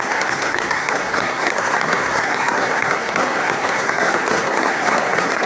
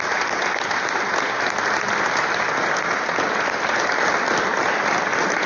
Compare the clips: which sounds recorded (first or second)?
second